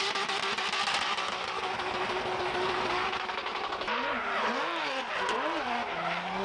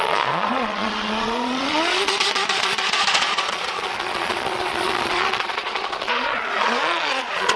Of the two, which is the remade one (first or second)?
second